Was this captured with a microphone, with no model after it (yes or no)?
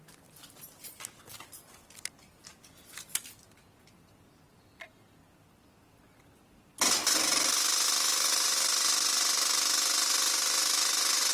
yes